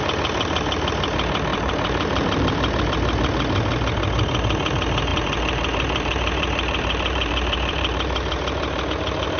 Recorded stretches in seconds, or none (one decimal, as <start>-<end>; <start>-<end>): 0.0-1.5; 2.8-5.1; 8.9-9.4